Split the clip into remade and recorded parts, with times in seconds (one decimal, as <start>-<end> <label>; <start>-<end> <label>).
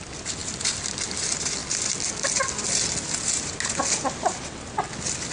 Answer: 0.0-5.3 recorded